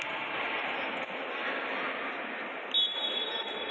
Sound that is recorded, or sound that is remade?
recorded